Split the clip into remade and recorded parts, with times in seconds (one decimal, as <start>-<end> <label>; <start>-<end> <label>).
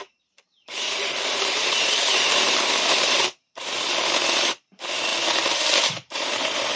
0.0-5.1 remade; 5.1-5.9 recorded; 5.9-6.8 remade